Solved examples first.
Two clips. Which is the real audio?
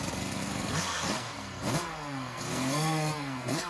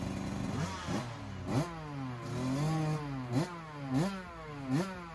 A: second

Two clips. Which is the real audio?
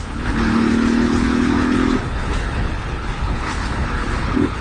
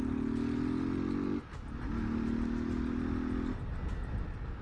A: second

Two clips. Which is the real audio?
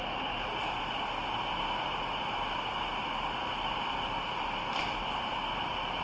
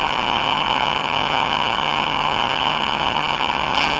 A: first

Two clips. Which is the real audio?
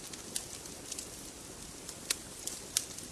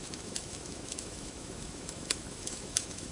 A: first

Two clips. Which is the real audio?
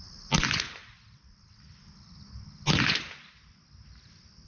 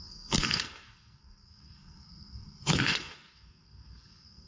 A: first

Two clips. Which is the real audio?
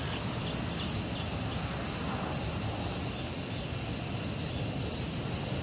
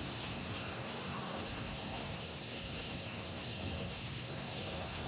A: first